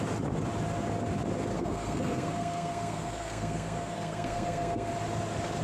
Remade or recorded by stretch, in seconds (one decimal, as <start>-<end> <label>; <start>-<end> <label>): 0.0-1.5 recorded; 1.5-4.9 remade; 4.9-5.6 recorded